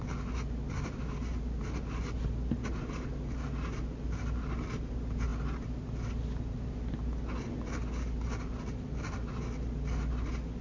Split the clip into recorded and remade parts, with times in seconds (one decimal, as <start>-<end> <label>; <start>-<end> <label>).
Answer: 0.0-10.6 recorded